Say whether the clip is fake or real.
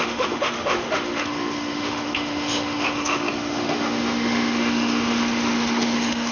fake